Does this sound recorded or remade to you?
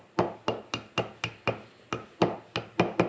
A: recorded